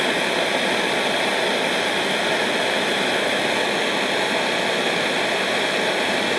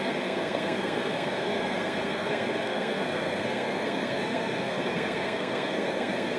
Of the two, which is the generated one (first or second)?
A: second